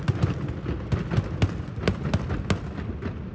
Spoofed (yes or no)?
no